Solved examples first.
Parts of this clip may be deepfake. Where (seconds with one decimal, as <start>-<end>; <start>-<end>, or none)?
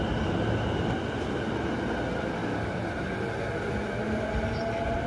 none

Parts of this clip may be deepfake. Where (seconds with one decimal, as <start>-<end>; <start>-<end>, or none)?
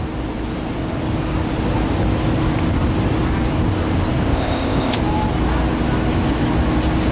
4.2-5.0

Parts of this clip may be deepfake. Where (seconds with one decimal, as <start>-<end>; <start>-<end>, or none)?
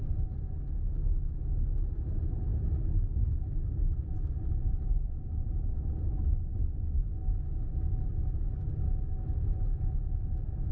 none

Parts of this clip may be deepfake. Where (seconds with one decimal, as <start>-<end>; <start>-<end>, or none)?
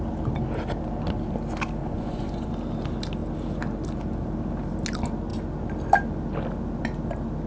1.8-2.5